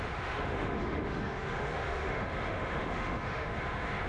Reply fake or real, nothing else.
fake